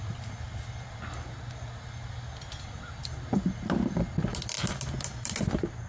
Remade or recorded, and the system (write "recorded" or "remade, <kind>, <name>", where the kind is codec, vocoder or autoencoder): recorded